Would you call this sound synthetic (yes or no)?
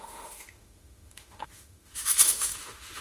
yes